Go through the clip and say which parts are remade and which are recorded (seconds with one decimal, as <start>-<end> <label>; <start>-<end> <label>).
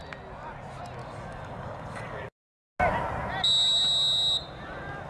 0.0-1.0 recorded; 1.0-2.6 remade; 2.6-5.1 recorded